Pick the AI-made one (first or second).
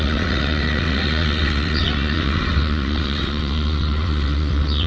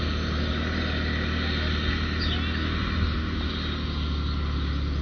first